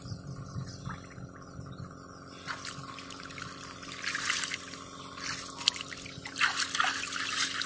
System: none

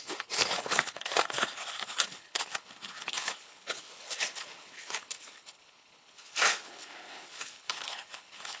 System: codec, HILCodec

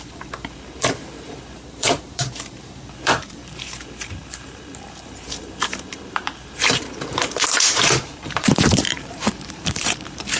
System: vocoder, BigVGAN v2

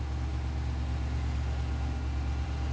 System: vocoder, BigVGAN v2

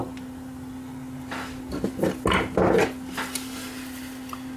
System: none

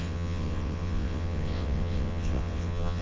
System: vocoder, WaveNeXt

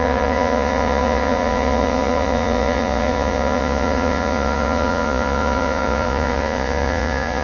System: vocoder, Vocos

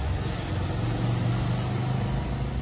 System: none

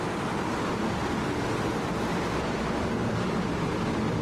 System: none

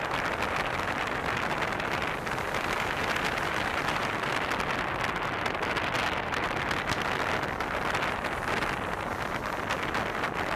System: none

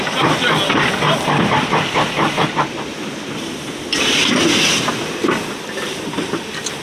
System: none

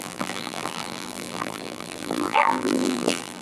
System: vocoder, BigVGAN v2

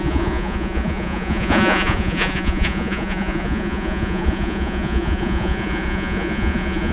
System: vocoder, Vocos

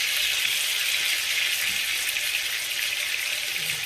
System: none